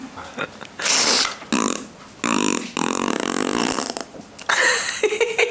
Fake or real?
real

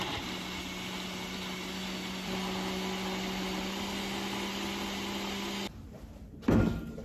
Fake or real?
real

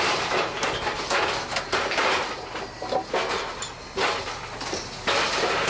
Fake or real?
real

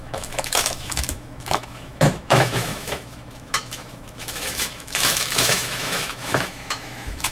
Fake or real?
fake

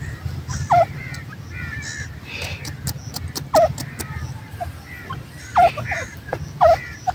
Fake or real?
real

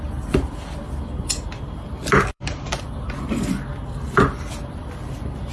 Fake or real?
fake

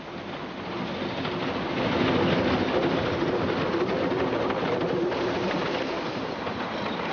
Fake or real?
real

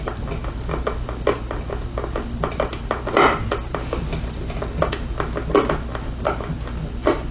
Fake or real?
real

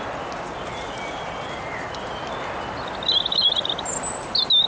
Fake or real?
real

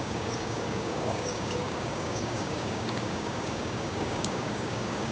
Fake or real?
fake